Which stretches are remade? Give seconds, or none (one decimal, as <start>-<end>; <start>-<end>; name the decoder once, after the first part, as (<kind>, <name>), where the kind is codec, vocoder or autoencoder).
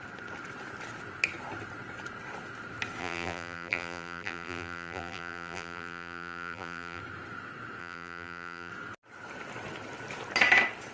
3.0-7.0 (vocoder, BigVGAN v2); 7.8-8.7